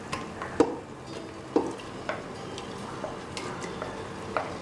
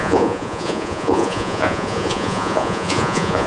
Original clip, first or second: first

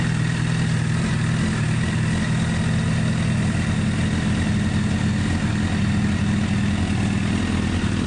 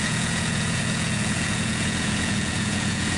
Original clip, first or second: first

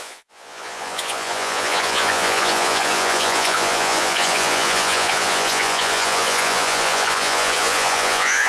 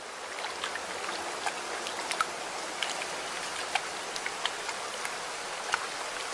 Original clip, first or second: second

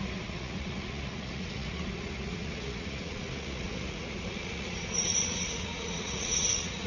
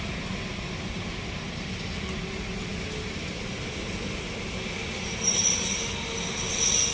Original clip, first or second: second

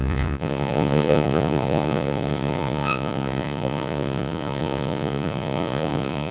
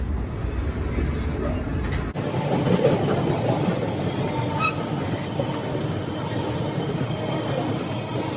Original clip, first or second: second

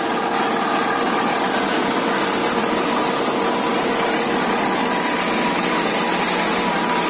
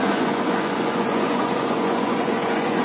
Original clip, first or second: first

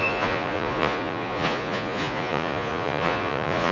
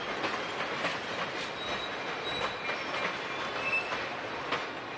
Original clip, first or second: second